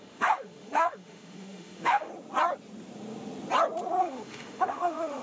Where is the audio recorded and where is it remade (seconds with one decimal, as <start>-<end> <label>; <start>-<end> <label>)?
0.0-2.1 remade; 2.1-4.0 recorded; 4.0-5.2 remade